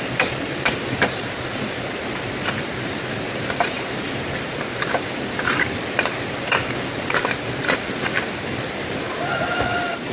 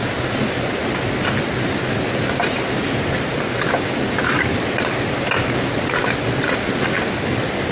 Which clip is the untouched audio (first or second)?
second